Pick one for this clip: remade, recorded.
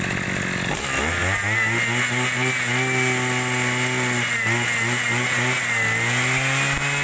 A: recorded